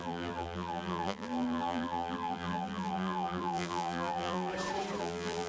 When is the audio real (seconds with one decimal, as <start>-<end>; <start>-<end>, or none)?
4.5-5.0